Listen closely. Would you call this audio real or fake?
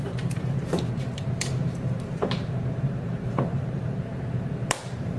fake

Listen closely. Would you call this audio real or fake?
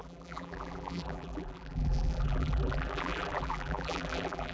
fake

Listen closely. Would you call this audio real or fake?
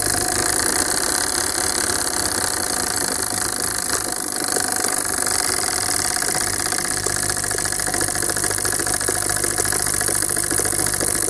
real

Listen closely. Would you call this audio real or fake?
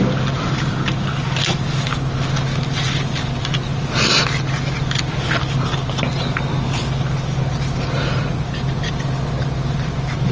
real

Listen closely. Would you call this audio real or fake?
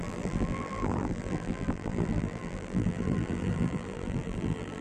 fake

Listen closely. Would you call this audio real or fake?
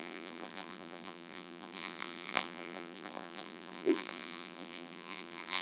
fake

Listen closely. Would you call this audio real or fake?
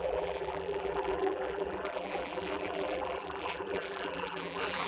fake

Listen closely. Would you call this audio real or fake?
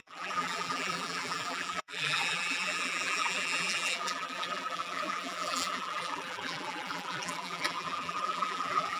fake